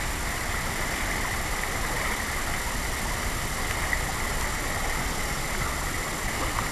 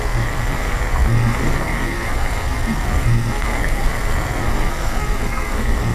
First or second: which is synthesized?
second